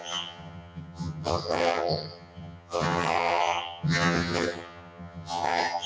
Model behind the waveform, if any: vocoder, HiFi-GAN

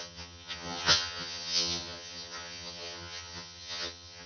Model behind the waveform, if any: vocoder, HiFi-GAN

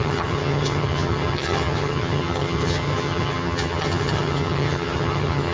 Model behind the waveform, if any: vocoder, HiFi-GAN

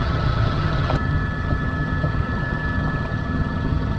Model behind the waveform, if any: vocoder, HiFi-GAN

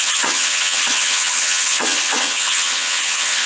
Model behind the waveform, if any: vocoder, HiFi-GAN